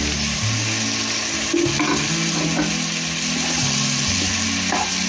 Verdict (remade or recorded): recorded